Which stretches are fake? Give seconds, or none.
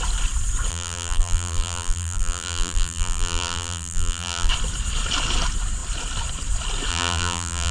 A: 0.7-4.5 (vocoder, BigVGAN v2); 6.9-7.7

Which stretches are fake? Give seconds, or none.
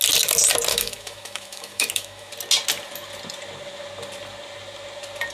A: 0.7-2.3 (autoencoder, DAC-VAE)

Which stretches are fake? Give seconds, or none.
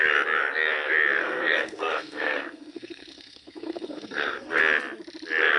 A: 1.2-4.6 (codec, SNAC)